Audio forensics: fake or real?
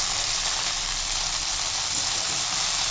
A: real